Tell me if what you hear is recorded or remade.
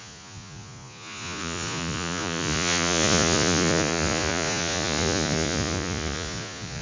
remade